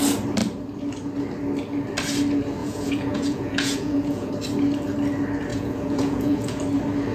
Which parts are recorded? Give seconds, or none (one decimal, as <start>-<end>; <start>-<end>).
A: 0.0-2.6; 4.3-5.5; 6.6-7.1